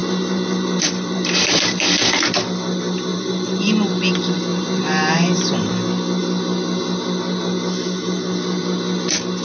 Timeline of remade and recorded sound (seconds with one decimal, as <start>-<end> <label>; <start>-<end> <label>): 0.0-2.0 remade; 2.0-3.1 recorded; 3.1-3.7 remade; 3.7-4.5 recorded; 4.5-5.7 remade; 5.7-9.4 recorded